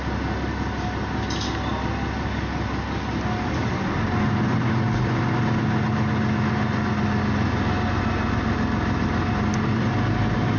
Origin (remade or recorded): recorded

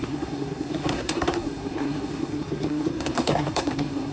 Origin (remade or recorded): remade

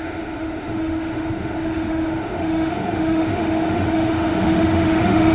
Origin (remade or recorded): remade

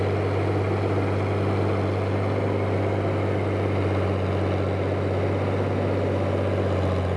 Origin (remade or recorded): recorded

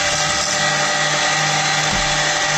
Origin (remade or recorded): recorded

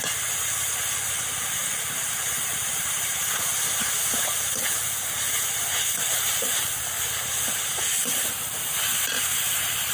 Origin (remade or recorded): recorded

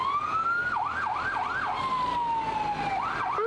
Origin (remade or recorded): recorded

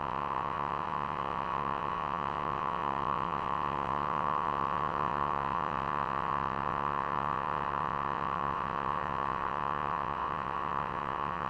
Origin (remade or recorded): remade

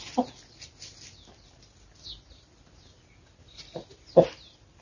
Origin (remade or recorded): recorded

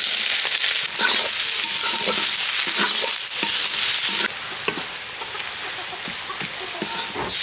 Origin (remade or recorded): recorded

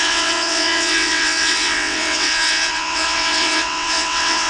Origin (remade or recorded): remade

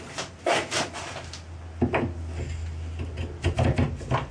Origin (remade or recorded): recorded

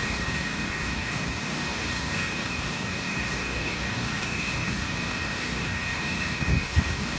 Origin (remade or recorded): remade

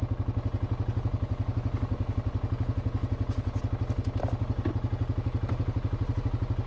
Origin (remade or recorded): recorded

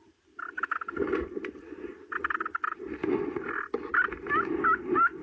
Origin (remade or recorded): recorded